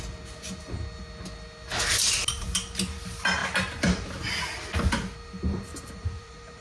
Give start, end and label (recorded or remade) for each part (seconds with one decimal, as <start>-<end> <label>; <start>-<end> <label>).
0.0-5.7 recorded; 5.7-6.6 remade